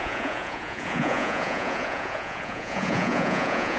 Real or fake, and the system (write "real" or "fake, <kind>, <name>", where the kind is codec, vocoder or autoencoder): fake, vocoder, Vocos